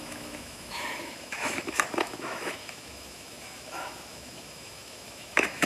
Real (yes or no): no